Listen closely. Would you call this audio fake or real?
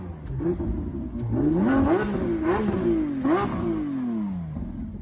real